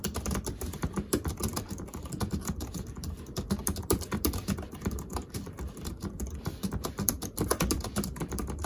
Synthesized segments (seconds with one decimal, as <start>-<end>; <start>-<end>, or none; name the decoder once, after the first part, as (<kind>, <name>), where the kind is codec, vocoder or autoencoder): 1.5-2.7 (vocoder, BigVGAN v2); 3.6-7.8

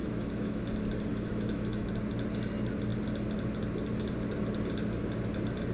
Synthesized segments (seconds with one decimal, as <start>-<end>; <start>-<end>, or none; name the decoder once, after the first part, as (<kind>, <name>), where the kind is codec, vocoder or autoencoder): 0.0-0.6 (autoencoder, DAC-VAE); 1.1-1.9